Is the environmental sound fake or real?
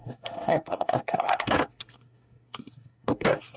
fake